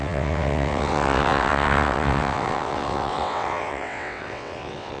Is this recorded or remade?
remade